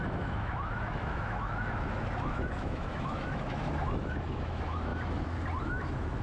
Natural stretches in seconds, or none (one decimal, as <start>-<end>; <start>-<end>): 4.9-5.6